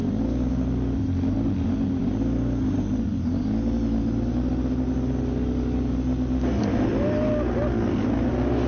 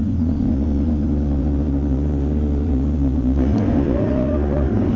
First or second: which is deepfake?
second